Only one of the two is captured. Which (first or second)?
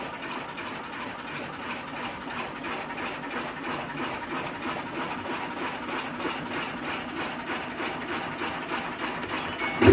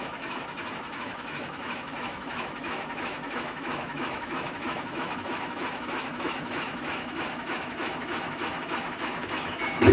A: first